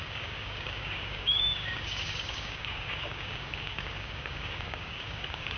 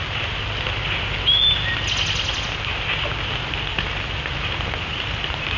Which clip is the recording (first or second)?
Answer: second